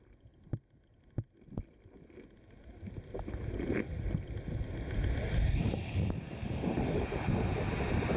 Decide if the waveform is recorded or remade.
recorded